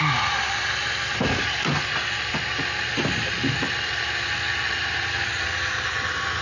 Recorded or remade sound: recorded